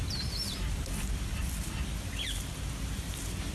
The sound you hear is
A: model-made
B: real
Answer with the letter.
B